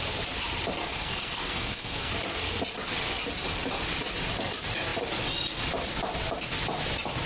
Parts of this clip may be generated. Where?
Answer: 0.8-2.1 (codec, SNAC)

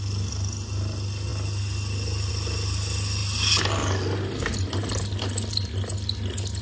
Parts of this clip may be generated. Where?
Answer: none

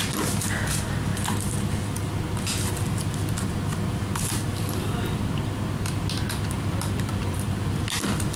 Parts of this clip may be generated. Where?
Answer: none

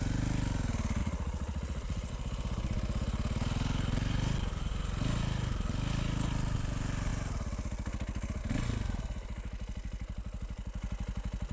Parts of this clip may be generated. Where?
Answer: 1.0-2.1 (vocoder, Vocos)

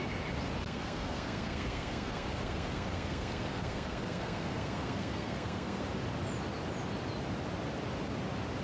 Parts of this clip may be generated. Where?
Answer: 0.6-5.8 (codec, SNAC)

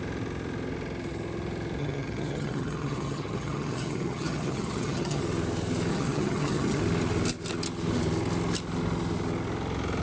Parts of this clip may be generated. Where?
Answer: 1.8-5.2 (vocoder, HiFi-GAN); 5.9-6.8

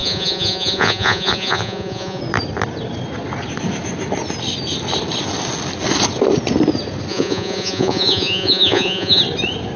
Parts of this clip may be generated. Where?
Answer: 0.0-2.2 (vocoder, Vocos); 7.1-9.2

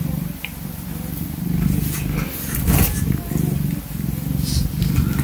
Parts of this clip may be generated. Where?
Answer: none